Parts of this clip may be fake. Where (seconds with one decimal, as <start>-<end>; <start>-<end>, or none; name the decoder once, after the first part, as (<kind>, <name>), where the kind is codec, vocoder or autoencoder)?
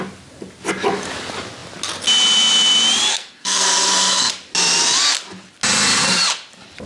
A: 3.1-4.3 (codec, SNAC)